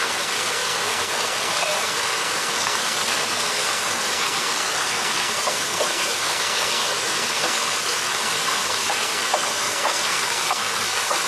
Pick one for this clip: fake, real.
fake